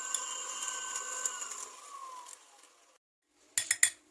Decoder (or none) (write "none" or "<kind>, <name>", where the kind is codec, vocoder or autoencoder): none